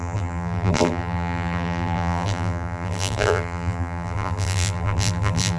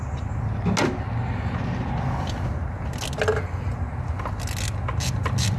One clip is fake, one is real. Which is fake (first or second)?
first